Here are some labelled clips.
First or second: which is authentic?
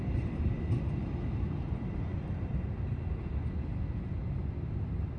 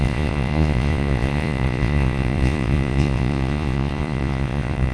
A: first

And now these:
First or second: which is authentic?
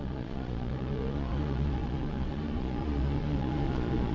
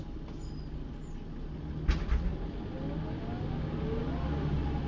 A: second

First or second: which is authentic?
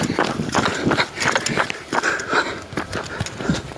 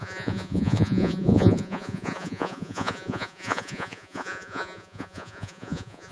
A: first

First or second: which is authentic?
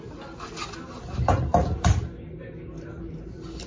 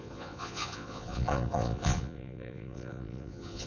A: first